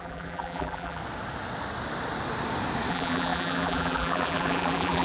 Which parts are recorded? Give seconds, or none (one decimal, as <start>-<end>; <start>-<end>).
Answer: 1.0-2.9